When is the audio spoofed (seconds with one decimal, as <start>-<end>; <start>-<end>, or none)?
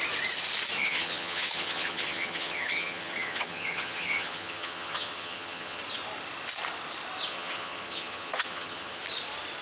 0.8-5.8; 7.3-9.0